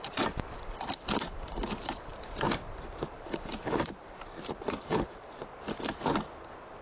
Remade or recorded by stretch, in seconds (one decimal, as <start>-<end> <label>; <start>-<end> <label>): 0.0-5.4 remade; 5.4-6.2 recorded; 6.2-6.8 remade